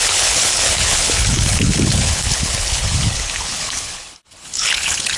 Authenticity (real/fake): fake